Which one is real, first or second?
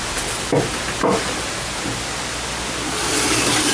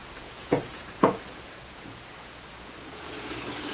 first